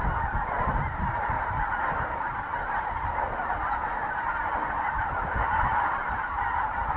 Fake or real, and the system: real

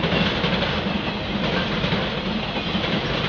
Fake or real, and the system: real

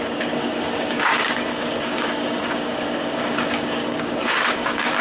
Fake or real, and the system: fake, codec, DAC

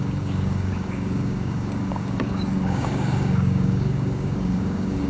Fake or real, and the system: fake, codec, DAC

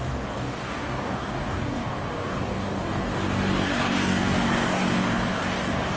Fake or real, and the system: fake, codec, DAC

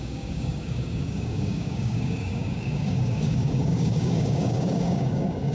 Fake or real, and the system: fake, codec, DAC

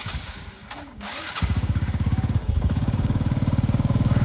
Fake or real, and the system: fake, codec, DAC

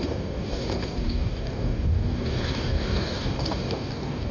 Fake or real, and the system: fake, codec, DAC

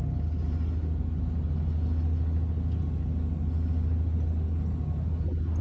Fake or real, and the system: real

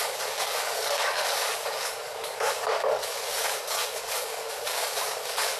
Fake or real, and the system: fake, codec, DAC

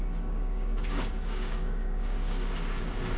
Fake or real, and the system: fake, codec, DAC